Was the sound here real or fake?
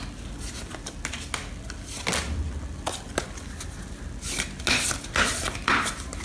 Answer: real